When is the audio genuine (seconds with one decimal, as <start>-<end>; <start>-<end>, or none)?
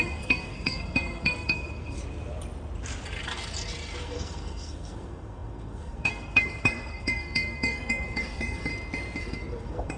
2.0-4.0; 8.7-9.2